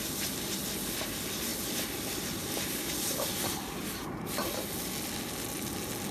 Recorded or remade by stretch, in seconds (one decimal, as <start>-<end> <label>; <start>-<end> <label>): 0.0-6.1 recorded